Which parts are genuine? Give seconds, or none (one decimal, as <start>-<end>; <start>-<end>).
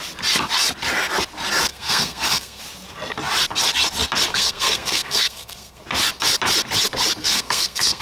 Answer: 0.0-1.7; 2.6-4.3; 5.8-7.2